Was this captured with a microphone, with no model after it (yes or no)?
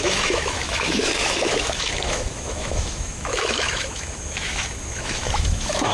no